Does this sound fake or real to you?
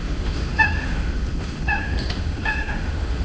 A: fake